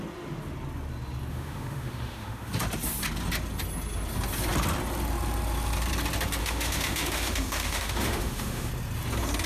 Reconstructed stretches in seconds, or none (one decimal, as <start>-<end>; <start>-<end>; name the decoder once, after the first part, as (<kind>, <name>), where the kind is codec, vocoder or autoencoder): 1.3-2.5 (autoencoder, DAC-VAE); 6.4-8.7